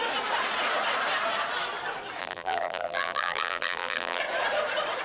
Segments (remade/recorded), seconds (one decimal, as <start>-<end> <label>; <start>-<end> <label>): 0.0-2.2 recorded; 2.2-4.2 remade; 4.2-5.0 recorded